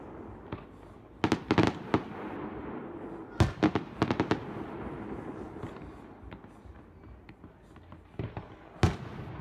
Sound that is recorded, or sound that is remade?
recorded